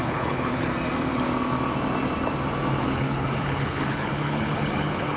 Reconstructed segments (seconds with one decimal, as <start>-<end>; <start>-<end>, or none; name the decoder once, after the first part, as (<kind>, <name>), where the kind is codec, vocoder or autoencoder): 0.0-0.7 (codec, HILCodec); 2.8-5.2

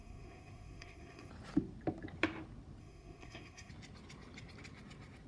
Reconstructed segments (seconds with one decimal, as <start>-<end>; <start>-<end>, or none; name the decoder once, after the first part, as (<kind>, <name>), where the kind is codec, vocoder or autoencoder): 0.0-1.3 (codec, SNAC); 2.8-3.7

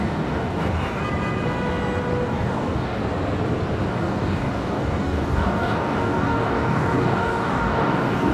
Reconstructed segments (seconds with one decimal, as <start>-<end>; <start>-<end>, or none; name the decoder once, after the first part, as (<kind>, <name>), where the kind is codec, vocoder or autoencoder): 0.0-1.0 (codec, DAC); 2.3-3.0; 3.9-8.3

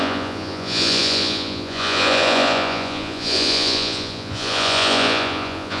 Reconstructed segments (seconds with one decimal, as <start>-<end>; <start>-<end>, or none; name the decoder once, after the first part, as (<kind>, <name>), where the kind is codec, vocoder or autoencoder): 0.0-5.8 (vocoder, Vocos)

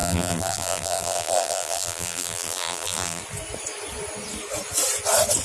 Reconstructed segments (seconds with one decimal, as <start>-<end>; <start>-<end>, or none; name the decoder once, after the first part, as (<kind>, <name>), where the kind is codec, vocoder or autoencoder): 0.0-3.2 (vocoder, BigVGAN v2)

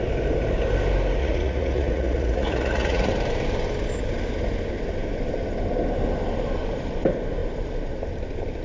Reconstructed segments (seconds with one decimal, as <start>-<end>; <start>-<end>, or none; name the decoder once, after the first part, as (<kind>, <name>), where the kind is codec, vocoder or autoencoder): 1.2-3.1 (vocoder, Vocos)